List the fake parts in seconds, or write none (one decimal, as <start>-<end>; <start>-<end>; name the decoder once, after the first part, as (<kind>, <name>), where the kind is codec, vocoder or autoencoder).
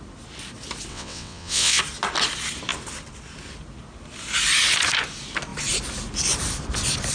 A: 0.9-1.8 (vocoder, WaveNeXt)